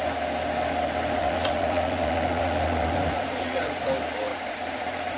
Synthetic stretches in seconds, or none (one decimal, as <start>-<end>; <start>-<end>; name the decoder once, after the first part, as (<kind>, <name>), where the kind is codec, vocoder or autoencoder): 1.2-3.8 (vocoder, Vocos); 4.3-5.2